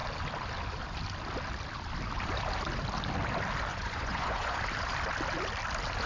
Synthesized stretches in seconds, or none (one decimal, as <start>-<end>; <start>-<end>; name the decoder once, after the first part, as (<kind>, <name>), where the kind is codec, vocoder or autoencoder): 3.7-4.6 (vocoder, Vocos)